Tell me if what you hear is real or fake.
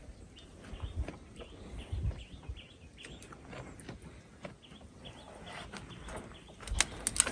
real